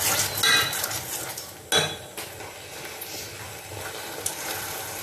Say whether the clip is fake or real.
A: real